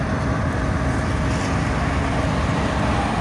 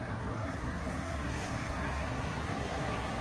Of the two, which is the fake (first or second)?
second